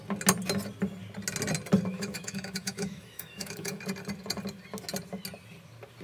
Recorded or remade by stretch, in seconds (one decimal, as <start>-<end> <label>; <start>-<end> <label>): 0.0-1.9 recorded; 1.9-3.8 remade; 3.8-6.0 recorded